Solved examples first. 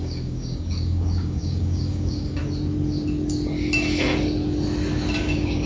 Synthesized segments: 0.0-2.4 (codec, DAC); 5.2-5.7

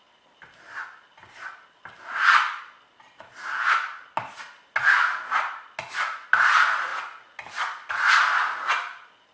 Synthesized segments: none

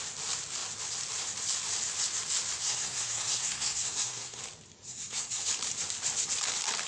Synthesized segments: 2.6-4.4 (codec, SNAC); 4.9-5.5

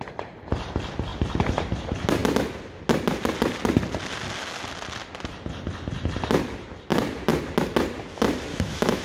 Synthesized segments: 8.5-9.0 (autoencoder, DAC-VAE)

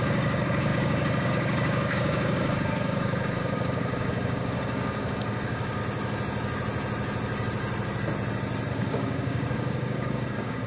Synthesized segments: 0.0-5.8 (codec, DAC); 8.7-10.7